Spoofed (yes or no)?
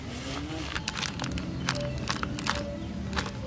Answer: no